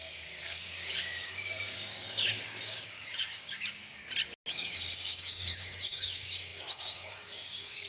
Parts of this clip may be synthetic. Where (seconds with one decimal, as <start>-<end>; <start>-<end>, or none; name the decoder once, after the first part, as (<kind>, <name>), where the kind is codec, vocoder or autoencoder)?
0.0-4.0 (codec, DAC); 4.5-7.9